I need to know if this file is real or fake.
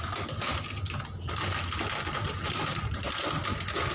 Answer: real